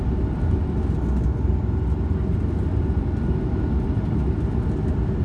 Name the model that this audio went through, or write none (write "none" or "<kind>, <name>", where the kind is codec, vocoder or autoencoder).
none